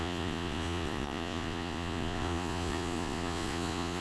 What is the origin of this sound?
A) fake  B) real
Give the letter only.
A